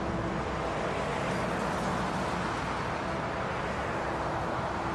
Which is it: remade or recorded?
recorded